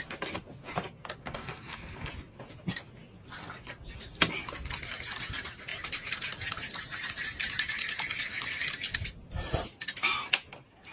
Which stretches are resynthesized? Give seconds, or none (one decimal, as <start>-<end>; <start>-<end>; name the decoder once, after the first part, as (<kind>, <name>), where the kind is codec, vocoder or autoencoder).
1.2-2.1 (codec, SNAC)